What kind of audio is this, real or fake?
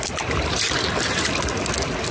real